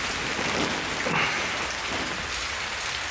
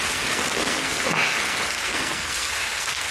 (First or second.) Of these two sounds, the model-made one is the second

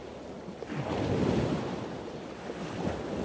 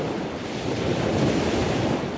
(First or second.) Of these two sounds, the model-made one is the second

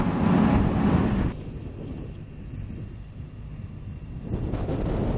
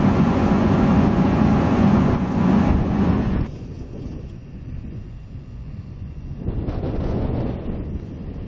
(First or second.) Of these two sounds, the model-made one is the second